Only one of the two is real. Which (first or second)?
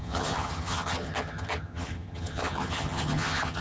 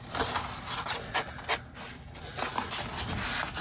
second